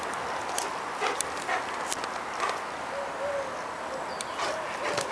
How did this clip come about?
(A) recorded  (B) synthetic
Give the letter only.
A